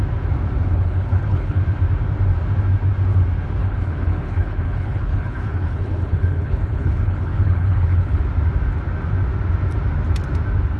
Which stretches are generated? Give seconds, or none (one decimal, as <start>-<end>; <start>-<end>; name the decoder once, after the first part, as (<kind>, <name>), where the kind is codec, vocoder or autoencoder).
0.7-1.6 (codec, HILCodec); 3.6-8.2